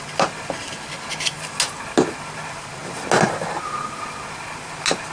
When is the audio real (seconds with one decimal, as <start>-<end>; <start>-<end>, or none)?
0.0-5.1